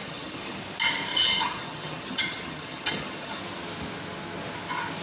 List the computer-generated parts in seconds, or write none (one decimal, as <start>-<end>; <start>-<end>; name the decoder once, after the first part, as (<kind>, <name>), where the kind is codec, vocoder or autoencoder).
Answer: 0.0-0.6 (vocoder, HiFi-GAN); 1.1-3.4